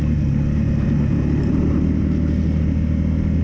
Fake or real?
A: real